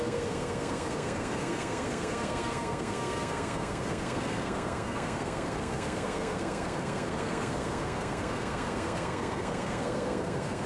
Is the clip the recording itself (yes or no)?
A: no